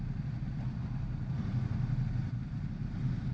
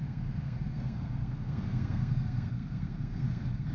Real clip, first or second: first